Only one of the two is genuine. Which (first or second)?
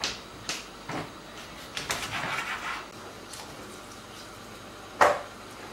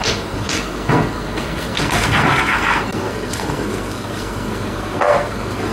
first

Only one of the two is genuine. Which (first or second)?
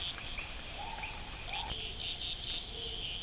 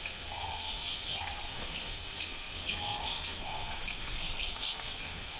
first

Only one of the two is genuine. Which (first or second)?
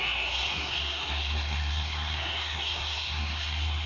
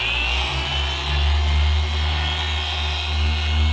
second